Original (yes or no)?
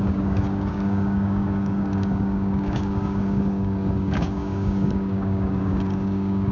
no